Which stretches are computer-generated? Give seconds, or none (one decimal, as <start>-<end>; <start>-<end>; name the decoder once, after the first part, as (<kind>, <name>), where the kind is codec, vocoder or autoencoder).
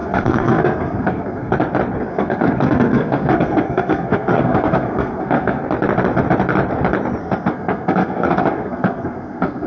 0.0-1.5 (codec, SNAC); 2.1-5.6; 7.2-9.7